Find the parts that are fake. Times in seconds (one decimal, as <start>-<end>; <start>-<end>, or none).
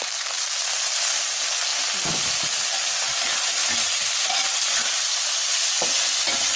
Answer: none